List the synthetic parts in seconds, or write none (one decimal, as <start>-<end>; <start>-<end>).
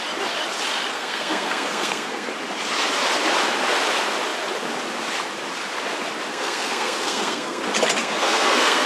0.9-2.3; 6.3-7.6; 8.0-8.9